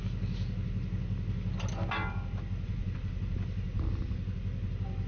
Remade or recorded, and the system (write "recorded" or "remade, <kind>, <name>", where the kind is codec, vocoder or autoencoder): recorded